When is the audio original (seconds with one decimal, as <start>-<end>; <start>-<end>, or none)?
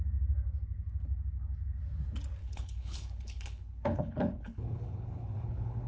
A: 0.0-2.4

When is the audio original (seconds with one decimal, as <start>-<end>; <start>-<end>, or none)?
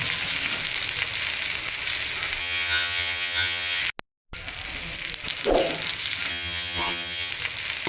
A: 0.0-2.4; 3.8-6.3; 7.3-7.9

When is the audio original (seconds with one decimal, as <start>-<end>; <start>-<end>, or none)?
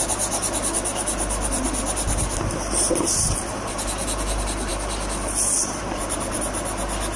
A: 0.0-7.2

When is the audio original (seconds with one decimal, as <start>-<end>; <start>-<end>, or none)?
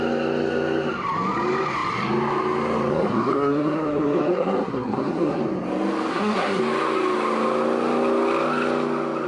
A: 0.0-2.9; 5.4-6.1; 6.6-9.3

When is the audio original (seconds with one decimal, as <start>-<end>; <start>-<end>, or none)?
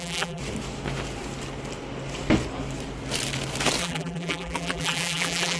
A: 0.4-3.8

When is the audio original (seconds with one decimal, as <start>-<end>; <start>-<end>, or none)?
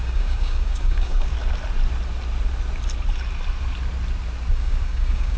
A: 1.3-4.5